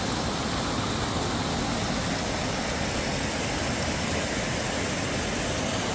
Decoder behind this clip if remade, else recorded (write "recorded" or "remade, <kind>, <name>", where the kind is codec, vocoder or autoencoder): recorded